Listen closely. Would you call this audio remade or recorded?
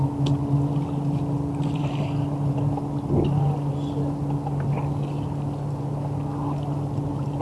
recorded